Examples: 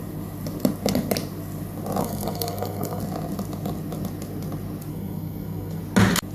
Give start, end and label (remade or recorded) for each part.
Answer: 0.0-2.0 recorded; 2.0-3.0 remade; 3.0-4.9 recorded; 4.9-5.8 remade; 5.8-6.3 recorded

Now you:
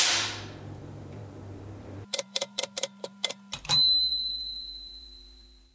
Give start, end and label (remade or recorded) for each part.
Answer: 0.0-5.7 remade

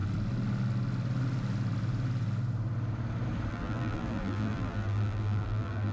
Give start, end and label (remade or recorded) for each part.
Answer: 0.0-3.5 recorded; 3.5-5.9 remade

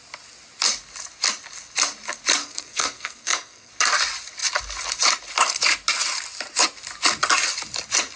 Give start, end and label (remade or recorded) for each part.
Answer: 0.0-2.4 recorded; 2.4-3.7 remade; 3.7-8.2 recorded

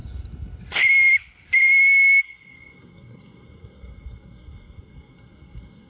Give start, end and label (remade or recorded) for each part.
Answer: 0.0-2.2 recorded; 2.2-5.9 remade

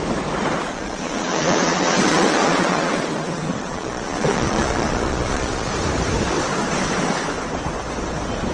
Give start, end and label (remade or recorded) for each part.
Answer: 0.0-0.7 recorded; 0.7-5.7 remade; 5.7-8.5 recorded